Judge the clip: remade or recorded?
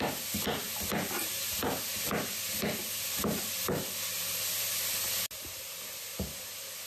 recorded